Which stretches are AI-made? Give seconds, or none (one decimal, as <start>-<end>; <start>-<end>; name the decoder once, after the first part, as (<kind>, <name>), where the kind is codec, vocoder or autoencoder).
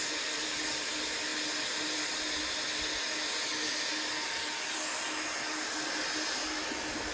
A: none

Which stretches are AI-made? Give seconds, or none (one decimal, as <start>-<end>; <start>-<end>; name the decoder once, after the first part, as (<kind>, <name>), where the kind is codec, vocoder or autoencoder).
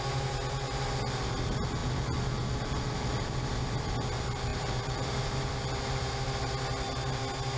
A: 4.5-5.5 (vocoder, BigVGAN v2)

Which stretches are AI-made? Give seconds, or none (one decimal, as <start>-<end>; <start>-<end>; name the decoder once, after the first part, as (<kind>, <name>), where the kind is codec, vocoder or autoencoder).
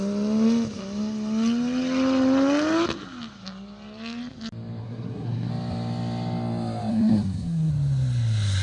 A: 4.8-5.5 (codec, SNAC); 6.9-7.7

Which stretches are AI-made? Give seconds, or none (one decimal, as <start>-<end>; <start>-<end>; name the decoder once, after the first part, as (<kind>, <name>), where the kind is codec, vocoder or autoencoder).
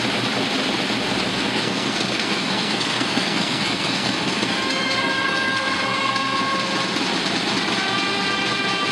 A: 1.3-6.4 (codec, SNAC)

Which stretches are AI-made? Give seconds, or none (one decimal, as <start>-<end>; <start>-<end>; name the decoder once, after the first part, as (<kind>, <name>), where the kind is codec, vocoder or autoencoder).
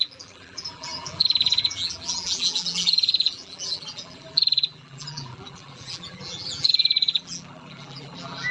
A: 0.0-8.5 (vocoder, BigVGAN v2)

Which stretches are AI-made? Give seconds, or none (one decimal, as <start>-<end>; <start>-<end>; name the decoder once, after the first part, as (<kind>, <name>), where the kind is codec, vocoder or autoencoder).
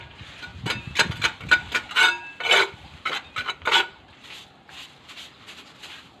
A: none